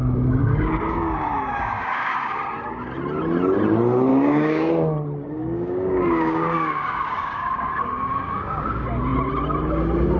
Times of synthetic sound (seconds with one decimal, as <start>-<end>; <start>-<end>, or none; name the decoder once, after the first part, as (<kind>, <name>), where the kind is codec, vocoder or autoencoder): 0.4-2.4 (codec, DAC); 4.1-4.7; 5.4-8.7